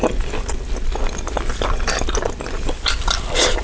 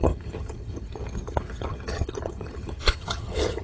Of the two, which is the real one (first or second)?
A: first